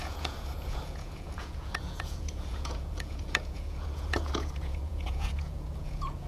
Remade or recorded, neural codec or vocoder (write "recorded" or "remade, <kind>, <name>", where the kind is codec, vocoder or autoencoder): remade, vocoder, Vocos